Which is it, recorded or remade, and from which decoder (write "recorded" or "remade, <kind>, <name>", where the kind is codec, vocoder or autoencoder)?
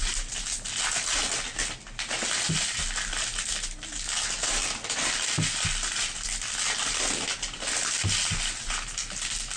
recorded